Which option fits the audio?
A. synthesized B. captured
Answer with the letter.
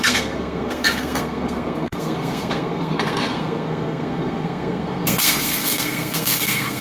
A